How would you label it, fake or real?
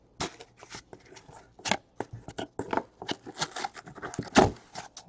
real